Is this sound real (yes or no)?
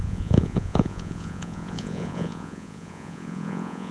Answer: no